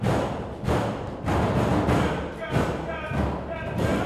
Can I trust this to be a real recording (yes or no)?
yes